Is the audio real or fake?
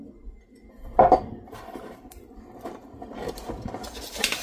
real